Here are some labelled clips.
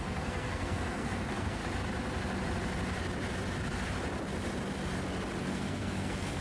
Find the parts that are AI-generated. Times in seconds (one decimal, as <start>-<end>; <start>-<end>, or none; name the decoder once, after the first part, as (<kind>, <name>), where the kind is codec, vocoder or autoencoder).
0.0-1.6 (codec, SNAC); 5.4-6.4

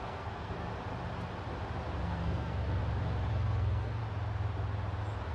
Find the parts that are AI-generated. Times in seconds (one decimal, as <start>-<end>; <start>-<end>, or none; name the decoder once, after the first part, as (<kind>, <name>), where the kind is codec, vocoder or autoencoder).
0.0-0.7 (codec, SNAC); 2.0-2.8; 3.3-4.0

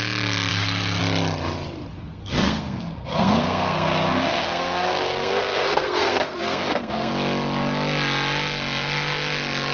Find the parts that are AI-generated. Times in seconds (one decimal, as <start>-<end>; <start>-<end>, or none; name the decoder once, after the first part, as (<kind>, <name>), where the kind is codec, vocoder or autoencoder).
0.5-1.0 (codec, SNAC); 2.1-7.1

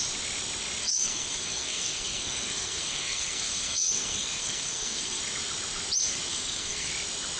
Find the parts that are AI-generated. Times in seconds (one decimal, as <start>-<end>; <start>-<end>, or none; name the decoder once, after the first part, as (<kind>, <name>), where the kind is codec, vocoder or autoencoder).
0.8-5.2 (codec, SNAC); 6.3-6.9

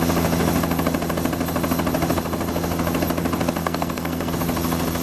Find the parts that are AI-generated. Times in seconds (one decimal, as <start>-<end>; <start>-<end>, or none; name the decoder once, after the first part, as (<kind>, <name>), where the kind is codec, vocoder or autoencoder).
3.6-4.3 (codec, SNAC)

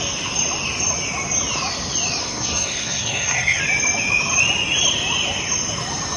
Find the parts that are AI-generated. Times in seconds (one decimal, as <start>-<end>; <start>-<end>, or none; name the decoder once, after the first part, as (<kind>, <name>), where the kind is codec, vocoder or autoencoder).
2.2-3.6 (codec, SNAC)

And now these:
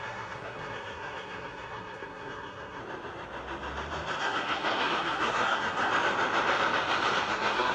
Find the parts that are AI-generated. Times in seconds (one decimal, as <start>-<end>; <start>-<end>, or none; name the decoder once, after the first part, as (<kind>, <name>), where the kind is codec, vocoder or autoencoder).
0.0-2.8 (codec, SNAC); 4.2-5.9; 7.3-7.7